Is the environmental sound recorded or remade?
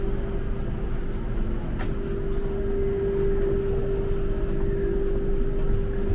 recorded